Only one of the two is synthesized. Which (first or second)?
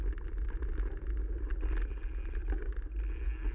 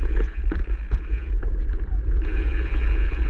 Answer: second